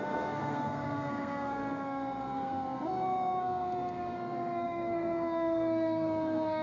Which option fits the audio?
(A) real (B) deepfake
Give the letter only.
B